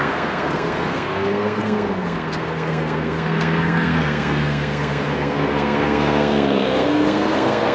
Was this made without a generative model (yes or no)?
no